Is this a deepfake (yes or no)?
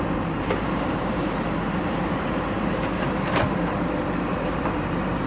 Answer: yes